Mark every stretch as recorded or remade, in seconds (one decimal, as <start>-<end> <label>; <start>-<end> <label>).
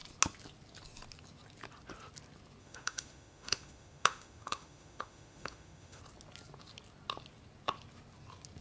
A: 0.0-2.6 recorded; 2.6-6.0 remade; 6.0-8.6 recorded